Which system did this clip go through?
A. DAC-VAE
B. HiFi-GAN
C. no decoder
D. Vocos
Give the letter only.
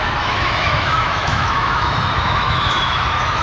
A